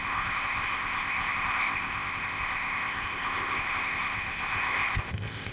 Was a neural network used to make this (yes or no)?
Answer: yes